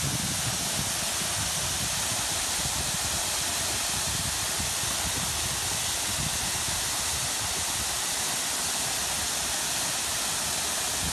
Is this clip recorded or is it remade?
recorded